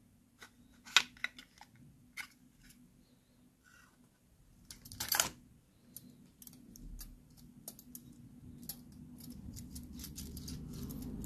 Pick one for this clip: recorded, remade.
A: recorded